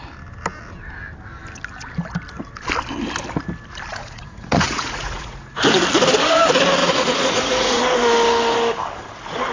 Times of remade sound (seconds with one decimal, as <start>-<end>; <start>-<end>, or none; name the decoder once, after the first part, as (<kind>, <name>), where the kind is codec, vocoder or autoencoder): 3.9-5.6 (vocoder, Vocos); 6.8-7.8